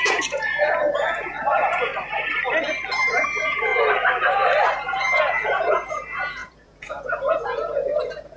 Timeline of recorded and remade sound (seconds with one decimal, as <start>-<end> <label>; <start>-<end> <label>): 0.0-1.9 remade; 1.9-3.1 recorded; 3.1-3.7 remade; 3.7-5.2 recorded; 5.2-8.4 remade